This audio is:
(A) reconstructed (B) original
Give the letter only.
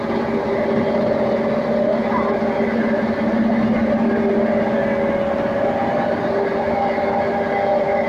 B